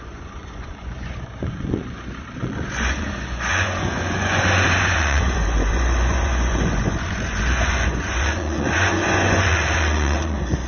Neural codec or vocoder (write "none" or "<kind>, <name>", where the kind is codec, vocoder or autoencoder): vocoder, Vocos